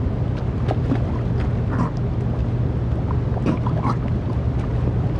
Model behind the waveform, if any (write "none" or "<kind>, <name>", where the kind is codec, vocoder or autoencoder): none